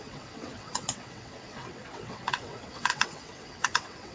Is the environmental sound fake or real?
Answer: fake